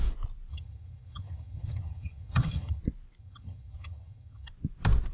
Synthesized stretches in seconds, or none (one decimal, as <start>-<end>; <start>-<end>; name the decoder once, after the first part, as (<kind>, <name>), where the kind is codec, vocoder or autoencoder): 0.5-2.8 (vocoder, HiFi-GAN); 3.2-4.5